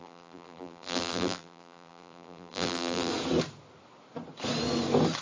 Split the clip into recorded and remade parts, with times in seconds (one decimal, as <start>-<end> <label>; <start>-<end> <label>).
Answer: 0.0-3.1 remade; 3.1-5.2 recorded